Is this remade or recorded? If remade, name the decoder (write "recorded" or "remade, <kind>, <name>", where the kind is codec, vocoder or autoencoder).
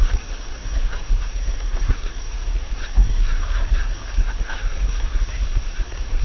remade, codec, SNAC